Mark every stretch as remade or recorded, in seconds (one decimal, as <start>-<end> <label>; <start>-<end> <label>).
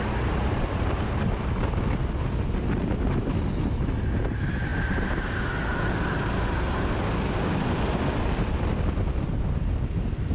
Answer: 0.0-10.3 recorded